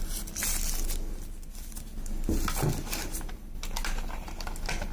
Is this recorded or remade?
recorded